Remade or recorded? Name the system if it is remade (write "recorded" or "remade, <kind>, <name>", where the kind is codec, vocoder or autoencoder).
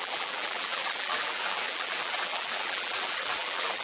remade, vocoder, BigVGAN v2